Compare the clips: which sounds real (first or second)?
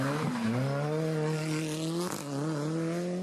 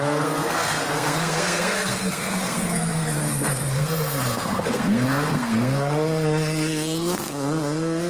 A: first